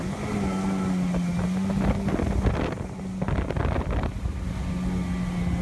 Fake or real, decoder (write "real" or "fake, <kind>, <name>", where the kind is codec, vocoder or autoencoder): real